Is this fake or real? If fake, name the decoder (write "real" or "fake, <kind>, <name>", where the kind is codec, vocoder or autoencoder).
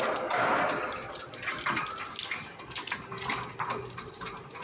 real